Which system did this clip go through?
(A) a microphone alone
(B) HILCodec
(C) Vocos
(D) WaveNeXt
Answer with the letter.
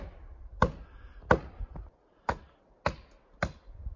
A